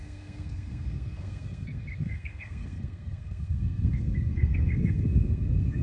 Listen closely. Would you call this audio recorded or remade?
remade